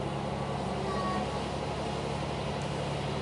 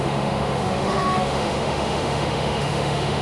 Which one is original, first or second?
first